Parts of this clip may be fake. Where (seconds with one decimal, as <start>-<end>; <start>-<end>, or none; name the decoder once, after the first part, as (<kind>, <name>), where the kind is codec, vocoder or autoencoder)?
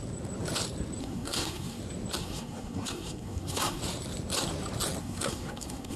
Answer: 1.0-1.8 (codec, SNAC); 2.2-3.8; 5.0-6.0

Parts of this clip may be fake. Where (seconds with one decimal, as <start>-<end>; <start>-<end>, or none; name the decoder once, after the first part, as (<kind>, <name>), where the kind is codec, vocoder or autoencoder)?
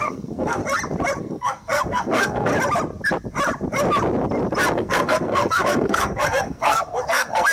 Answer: 0.0-0.6 (codec, SNAC); 1.2-2.5; 4.7-7.5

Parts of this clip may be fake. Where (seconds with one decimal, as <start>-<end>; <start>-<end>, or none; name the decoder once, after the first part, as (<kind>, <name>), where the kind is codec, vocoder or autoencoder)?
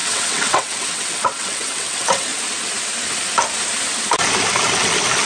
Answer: 0.0-2.3 (vocoder, WaveNeXt)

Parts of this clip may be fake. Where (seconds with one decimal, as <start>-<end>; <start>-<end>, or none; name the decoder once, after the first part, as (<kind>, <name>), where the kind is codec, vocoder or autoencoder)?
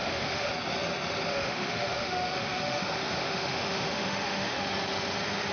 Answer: 0.0-0.5 (autoencoder, DAC-VAE); 1.3-4.6